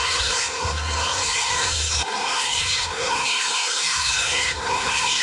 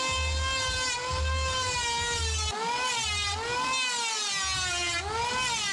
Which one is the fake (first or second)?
first